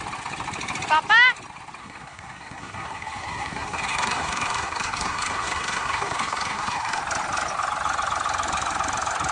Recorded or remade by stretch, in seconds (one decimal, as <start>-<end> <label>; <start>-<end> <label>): 0.0-1.8 recorded; 1.8-7.0 remade; 7.0-9.3 recorded